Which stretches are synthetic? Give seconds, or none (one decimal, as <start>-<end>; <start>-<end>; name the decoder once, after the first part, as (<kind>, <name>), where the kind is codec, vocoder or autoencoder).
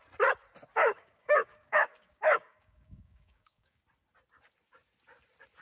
0.8-3.8 (codec, DAC)